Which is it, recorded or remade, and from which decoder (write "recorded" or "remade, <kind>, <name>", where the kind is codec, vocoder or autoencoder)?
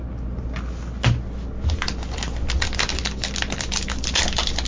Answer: recorded